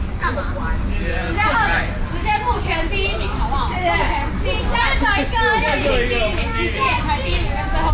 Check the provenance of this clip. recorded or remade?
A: recorded